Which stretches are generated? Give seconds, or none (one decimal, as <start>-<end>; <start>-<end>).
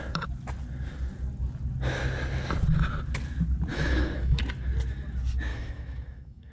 3.7-4.4; 5.5-6.5